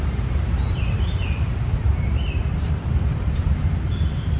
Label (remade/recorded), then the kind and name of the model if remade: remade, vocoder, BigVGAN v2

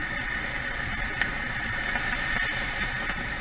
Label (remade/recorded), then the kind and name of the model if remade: remade, vocoder, BigVGAN v2